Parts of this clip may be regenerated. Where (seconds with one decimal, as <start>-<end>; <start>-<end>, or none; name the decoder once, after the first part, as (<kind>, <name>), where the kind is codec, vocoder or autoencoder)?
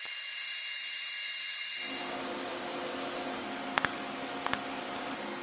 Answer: none